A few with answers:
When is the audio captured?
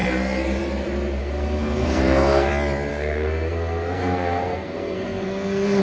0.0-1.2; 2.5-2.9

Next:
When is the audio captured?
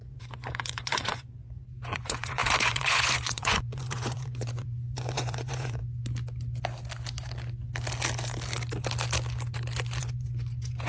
5.8-10.0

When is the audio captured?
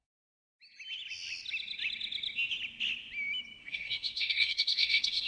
0.4-3.6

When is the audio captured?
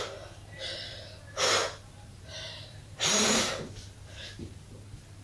0.0-1.6; 4.7-5.2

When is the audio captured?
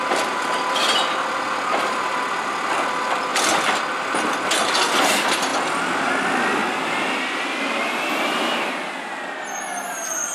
0.0-3.3; 3.8-5.5; 6.1-10.3